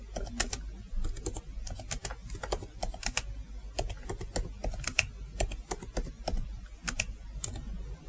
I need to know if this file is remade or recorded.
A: recorded